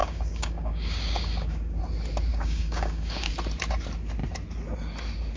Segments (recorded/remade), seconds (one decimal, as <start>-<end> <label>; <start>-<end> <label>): 0.0-1.8 remade; 1.8-2.3 recorded; 2.3-3.3 remade; 3.3-5.4 recorded